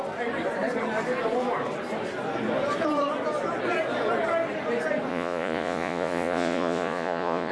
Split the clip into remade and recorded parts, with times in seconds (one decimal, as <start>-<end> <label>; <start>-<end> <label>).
0.0-5.1 recorded; 5.1-7.5 remade